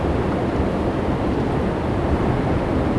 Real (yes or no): yes